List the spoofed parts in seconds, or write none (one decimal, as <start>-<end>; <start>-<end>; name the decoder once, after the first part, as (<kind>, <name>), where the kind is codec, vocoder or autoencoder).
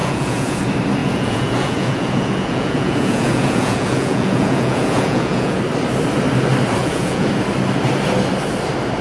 0.0-0.6 (vocoder, Vocos); 1.0-5.6; 6.8-7.3